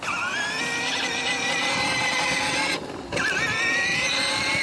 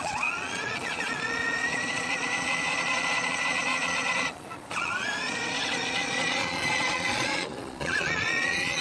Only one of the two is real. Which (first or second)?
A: first